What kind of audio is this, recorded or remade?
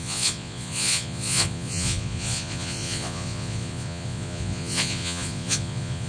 remade